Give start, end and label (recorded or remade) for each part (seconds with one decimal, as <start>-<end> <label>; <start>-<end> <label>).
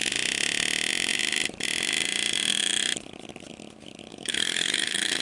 0.0-4.1 recorded; 4.1-5.2 remade